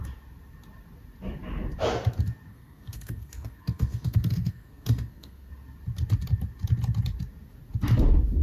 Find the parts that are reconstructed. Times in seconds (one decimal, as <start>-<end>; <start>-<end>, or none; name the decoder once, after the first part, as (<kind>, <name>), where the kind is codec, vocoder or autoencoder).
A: 2.5-5.5 (codec, SNAC)